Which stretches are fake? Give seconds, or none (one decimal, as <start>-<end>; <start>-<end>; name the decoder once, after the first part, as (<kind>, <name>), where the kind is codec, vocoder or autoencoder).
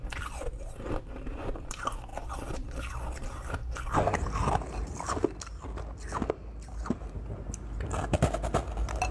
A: none